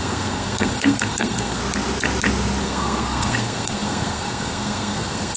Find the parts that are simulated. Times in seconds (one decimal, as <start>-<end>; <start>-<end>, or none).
0.0-1.6; 2.6-5.4